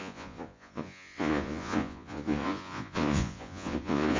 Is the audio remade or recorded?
remade